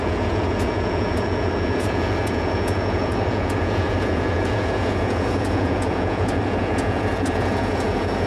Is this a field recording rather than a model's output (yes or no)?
no